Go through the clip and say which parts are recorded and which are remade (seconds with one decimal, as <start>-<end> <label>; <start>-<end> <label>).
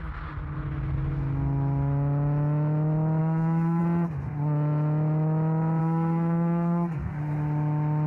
0.0-3.2 recorded; 3.2-3.8 remade; 3.8-5.8 recorded; 5.8-7.2 remade; 7.2-8.1 recorded